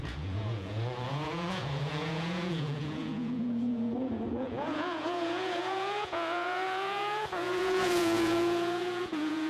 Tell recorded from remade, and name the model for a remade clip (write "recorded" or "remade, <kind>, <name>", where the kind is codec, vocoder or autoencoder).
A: remade, vocoder, Vocos